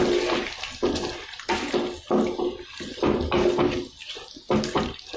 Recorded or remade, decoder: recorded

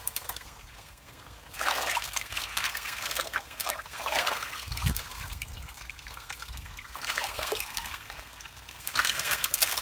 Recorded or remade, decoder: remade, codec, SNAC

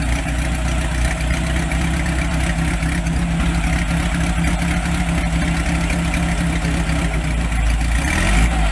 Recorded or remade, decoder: recorded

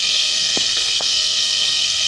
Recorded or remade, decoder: remade, codec, SNAC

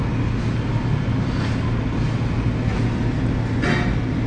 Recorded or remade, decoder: recorded